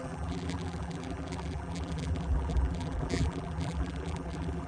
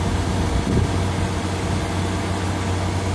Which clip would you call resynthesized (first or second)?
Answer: first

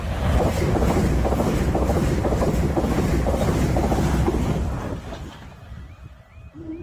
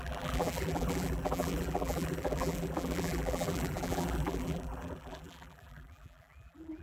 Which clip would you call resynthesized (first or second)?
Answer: second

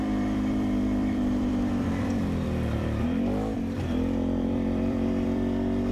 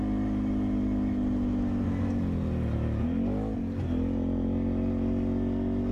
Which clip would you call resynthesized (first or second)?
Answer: first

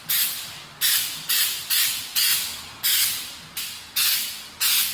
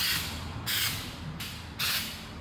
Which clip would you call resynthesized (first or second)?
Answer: first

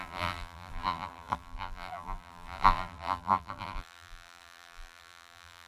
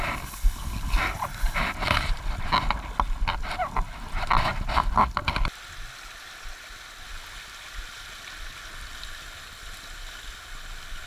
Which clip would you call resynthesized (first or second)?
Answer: first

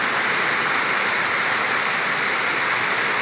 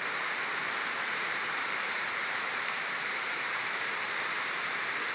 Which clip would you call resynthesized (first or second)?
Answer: second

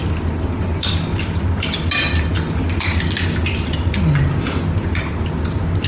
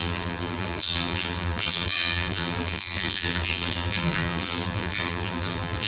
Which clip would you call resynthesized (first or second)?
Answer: second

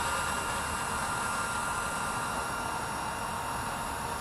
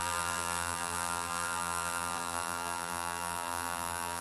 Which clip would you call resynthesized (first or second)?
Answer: second